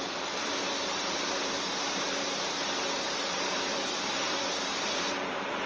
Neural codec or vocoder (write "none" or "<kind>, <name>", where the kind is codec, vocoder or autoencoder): vocoder, BigVGAN v2